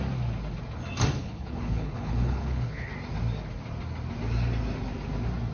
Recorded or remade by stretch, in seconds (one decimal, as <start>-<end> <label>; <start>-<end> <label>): 0.0-1.2 recorded; 1.2-2.9 remade; 2.9-5.5 recorded

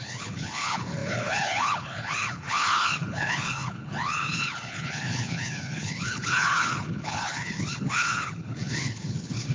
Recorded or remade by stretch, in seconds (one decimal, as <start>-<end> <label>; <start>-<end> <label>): 0.0-9.5 remade